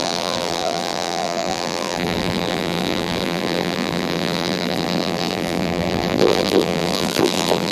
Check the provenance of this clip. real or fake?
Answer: fake